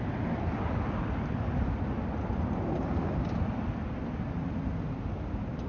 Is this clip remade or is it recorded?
recorded